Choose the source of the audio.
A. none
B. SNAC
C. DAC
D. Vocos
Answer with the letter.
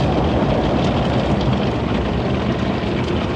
A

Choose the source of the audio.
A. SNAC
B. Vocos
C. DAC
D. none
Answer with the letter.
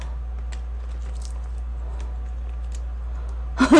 D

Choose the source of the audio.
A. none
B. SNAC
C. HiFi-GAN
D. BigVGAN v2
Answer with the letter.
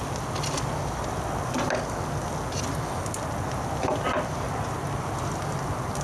A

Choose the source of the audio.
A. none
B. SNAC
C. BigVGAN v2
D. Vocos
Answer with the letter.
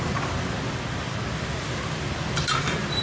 A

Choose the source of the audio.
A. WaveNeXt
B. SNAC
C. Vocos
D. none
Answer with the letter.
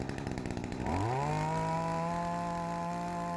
D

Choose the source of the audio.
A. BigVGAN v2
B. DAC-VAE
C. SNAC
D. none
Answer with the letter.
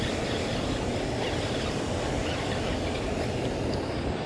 D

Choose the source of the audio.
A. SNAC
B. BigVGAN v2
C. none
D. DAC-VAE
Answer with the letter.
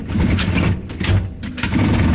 C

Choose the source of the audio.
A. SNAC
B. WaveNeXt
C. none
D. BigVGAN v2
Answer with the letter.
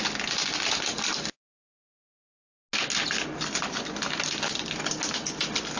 C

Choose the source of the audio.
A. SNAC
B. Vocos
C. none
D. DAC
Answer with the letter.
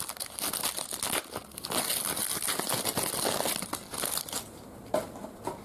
C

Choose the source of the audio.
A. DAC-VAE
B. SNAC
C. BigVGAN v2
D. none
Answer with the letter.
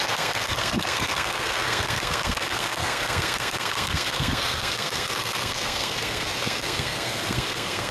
B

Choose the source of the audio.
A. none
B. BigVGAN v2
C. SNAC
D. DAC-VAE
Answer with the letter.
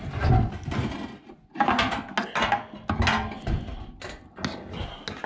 A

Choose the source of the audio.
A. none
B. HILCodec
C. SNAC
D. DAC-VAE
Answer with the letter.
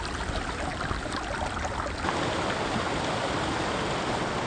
A